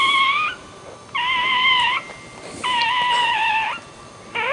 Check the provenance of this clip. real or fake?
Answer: real